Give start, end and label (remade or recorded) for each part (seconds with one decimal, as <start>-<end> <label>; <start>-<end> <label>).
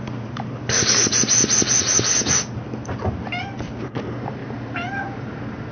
0.0-1.4 remade; 1.4-3.7 recorded; 3.7-5.7 remade